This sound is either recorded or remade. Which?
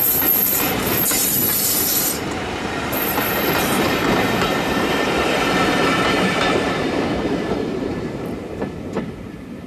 remade